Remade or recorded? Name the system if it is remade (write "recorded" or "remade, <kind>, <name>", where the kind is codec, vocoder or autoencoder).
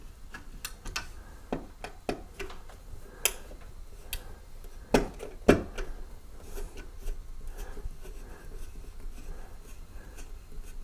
recorded